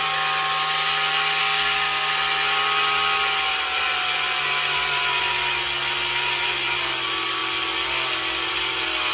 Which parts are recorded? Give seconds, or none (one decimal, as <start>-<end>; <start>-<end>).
0.0-1.4; 2.1-9.1